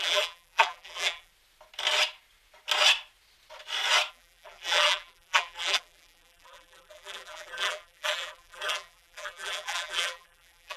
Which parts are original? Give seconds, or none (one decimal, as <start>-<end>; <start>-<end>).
1.3-4.1